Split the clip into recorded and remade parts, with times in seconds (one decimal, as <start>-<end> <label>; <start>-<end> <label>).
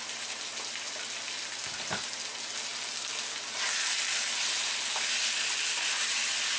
0.0-6.6 recorded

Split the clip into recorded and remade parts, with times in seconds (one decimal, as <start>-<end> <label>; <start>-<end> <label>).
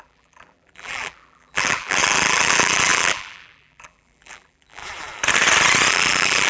0.0-4.8 remade; 4.8-5.9 recorded; 5.9-6.5 remade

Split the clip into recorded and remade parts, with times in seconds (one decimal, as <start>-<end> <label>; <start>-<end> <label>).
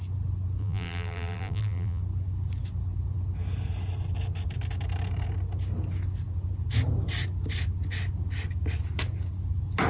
0.0-0.6 recorded; 0.6-2.0 remade; 2.0-9.9 recorded